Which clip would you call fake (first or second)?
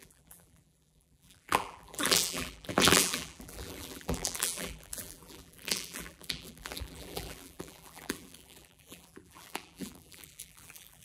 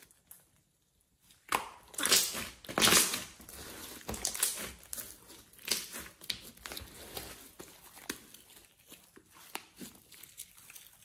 first